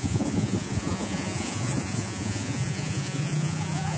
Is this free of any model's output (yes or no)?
no